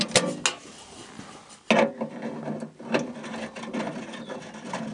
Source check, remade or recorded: recorded